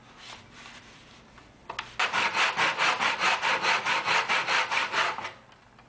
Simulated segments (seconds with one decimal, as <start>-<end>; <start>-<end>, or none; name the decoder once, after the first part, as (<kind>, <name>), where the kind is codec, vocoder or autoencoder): none